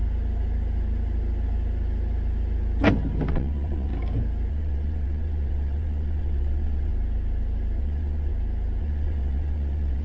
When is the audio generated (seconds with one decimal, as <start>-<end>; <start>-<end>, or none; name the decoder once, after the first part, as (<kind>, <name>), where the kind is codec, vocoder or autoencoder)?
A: 3.3-3.9 (vocoder, WaveNeXt); 4.5-6.9; 7.8-8.3; 8.8-10.0